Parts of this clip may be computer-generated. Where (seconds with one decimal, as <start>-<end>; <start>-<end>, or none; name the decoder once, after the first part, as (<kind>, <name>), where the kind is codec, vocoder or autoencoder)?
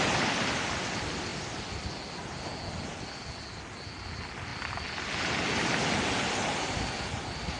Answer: none